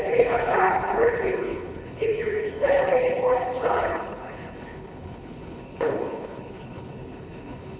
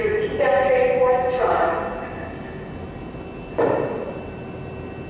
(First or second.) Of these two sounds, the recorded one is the second